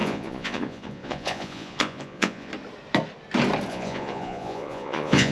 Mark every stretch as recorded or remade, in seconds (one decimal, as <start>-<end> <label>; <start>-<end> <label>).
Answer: 0.0-2.5 remade; 2.5-3.7 recorded; 3.7-5.3 remade